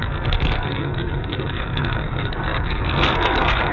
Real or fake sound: fake